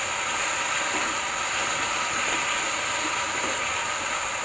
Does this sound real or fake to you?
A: real